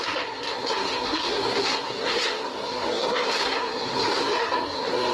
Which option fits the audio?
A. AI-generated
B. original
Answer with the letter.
A